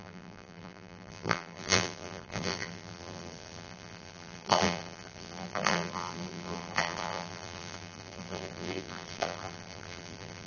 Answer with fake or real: fake